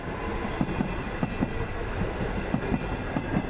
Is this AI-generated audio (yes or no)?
no